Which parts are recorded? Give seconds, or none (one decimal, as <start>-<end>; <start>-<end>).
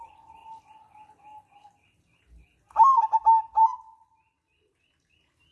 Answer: 0.0-5.5